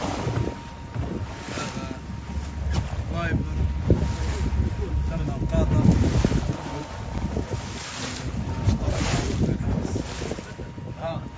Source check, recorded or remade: recorded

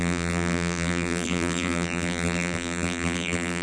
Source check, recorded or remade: remade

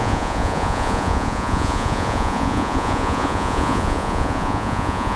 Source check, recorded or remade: remade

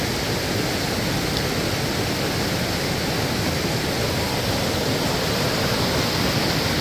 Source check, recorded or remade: recorded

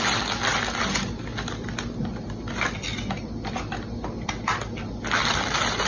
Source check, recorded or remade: recorded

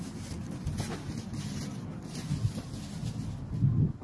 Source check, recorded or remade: recorded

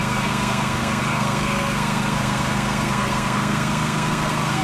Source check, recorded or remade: remade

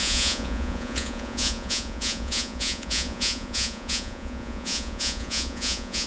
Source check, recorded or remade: remade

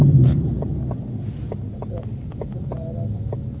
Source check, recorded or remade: recorded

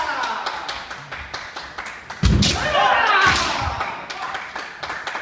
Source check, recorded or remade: recorded